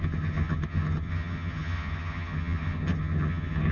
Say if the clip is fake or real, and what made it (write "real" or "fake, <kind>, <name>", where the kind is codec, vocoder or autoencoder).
fake, vocoder, HiFi-GAN